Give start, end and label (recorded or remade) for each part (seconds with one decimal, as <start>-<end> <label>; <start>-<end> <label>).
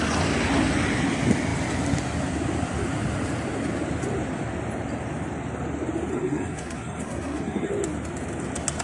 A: 0.0-6.1 recorded; 6.1-7.7 remade; 7.7-8.8 recorded